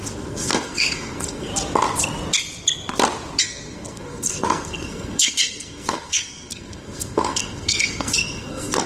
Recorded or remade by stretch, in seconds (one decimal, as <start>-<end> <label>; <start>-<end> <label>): 0.0-1.5 remade; 1.5-3.4 recorded; 3.4-8.9 remade